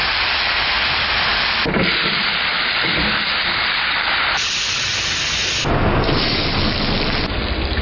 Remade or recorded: recorded